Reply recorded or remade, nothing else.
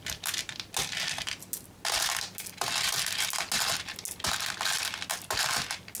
recorded